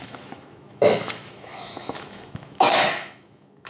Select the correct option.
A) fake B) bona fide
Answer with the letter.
A